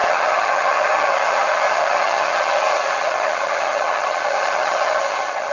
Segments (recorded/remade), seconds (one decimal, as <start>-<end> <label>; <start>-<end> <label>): 0.0-5.5 remade